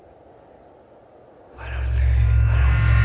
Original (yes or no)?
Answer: yes